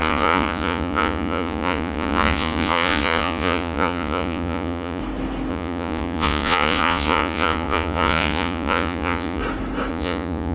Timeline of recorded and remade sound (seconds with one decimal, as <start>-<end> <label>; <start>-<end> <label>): 0.0-5.0 remade; 5.0-5.5 recorded; 5.5-9.4 remade; 9.4-9.9 recorded; 9.9-10.5 remade